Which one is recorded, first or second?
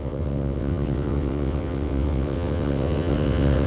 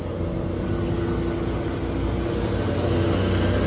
second